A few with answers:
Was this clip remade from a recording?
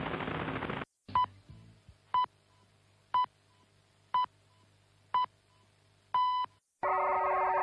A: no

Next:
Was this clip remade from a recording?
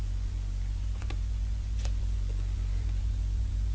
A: yes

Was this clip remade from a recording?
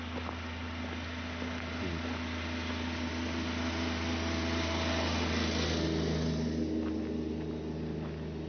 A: no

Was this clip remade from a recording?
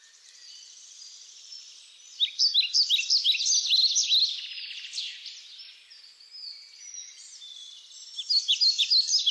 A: no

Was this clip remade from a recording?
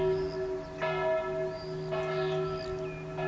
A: no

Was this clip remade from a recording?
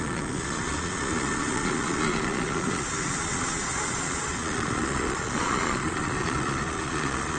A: yes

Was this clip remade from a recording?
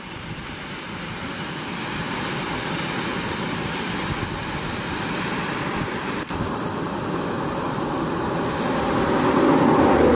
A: no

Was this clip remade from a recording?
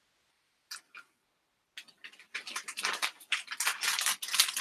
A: no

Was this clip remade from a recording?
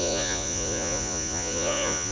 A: yes